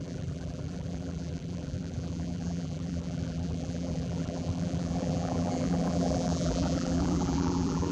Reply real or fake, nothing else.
fake